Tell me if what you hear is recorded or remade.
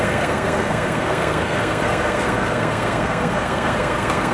remade